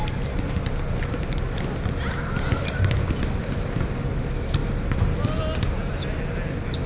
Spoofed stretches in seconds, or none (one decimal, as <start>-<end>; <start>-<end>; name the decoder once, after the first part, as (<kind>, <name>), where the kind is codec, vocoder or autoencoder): none